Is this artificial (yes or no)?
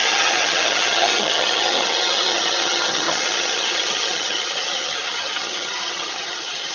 yes